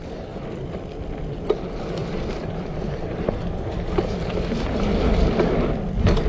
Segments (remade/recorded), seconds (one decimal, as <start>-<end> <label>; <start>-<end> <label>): 0.0-2.0 recorded; 2.0-5.1 remade; 5.1-6.3 recorded